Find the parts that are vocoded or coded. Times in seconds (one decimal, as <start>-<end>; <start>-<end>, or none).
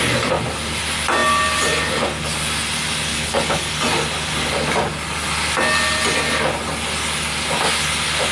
3.1-3.7